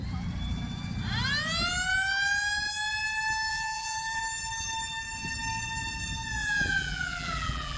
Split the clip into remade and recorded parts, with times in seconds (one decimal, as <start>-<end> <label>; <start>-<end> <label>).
0.0-3.5 recorded; 3.5-4.2 remade; 4.2-6.4 recorded; 6.4-7.8 remade